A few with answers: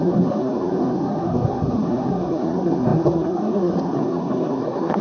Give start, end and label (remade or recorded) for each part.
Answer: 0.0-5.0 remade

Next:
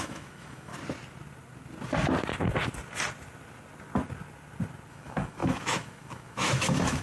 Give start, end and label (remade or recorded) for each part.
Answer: 0.0-0.7 remade; 0.7-4.9 recorded; 4.9-7.0 remade

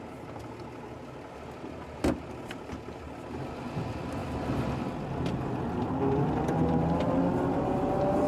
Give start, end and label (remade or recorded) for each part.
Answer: 0.0-8.3 recorded

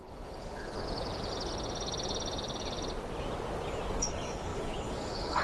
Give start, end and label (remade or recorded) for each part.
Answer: 0.0-0.8 remade; 0.8-4.0 recorded; 4.0-5.4 remade

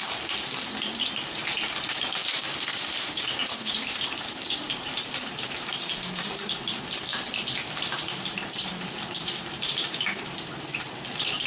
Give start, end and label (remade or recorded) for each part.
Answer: 0.0-11.5 remade

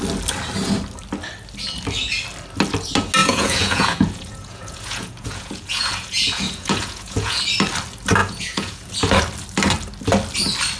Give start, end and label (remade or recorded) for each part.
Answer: 0.0-3.2 recorded; 3.2-7.4 remade; 7.4-8.2 recorded; 8.2-8.9 remade; 8.9-10.8 recorded

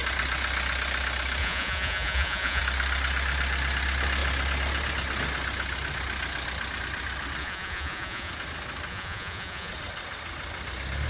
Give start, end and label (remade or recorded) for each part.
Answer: 0.0-1.4 recorded; 1.4-2.6 remade; 2.6-7.4 recorded; 7.4-8.3 remade; 8.3-8.9 recorded; 8.9-9.7 remade; 9.7-11.1 recorded